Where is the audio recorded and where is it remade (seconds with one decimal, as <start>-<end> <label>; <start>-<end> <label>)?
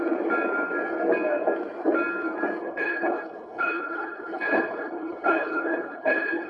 0.0-2.6 recorded; 2.6-6.5 remade